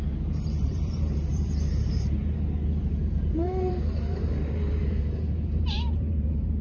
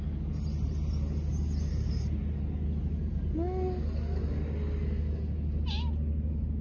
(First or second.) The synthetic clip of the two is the first